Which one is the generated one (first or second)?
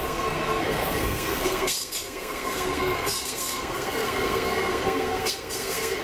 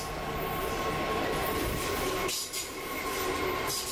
first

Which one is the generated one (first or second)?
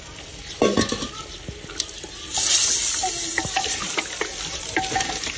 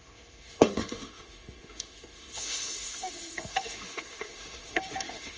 second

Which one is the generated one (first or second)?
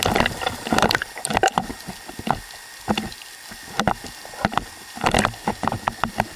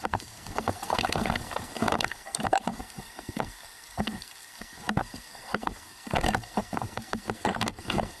second